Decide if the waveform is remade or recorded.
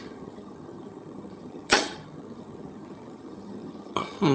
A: remade